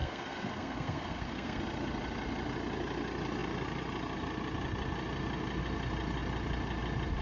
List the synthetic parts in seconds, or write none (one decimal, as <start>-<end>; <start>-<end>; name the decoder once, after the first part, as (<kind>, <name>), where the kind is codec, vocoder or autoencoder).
0.0-1.6 (codec, SNAC)